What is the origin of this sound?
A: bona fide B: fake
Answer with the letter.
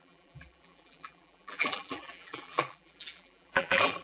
B